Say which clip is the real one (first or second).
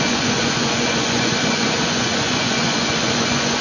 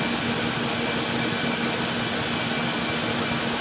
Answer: second